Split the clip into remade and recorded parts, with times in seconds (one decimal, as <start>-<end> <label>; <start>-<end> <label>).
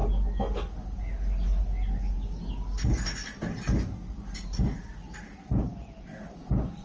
0.0-6.8 recorded